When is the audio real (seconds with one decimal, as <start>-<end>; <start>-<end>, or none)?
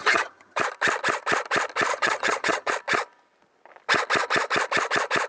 0.6-1.9; 2.7-5.3